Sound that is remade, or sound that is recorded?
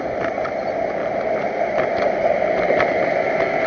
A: recorded